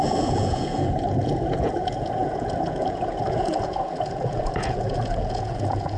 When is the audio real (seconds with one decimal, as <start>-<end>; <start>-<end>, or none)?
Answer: none